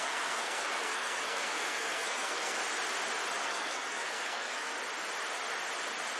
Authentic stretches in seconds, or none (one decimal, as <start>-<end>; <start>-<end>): 2.6-3.4; 4.7-6.2